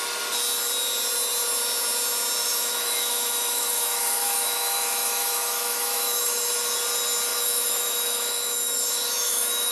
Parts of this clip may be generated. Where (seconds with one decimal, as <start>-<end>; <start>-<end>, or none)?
2.4-6.5; 7.3-9.7